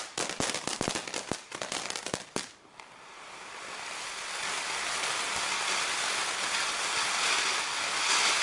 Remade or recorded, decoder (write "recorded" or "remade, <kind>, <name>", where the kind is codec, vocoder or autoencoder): recorded